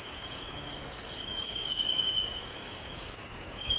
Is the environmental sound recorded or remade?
remade